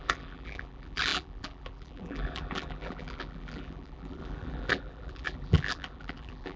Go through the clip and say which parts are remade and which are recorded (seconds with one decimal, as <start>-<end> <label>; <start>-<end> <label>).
0.0-6.6 remade